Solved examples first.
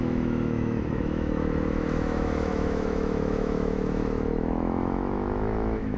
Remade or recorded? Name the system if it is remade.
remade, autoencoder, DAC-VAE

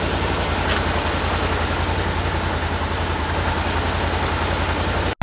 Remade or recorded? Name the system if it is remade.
recorded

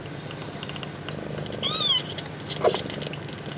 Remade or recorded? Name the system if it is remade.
recorded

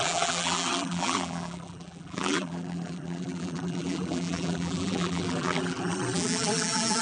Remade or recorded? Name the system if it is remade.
remade, vocoder, BigVGAN v2